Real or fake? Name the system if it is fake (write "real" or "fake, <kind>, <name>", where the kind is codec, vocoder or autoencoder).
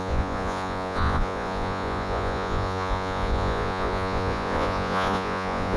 fake, vocoder, Vocos